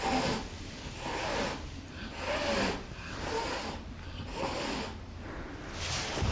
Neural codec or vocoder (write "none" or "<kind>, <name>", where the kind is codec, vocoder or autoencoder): none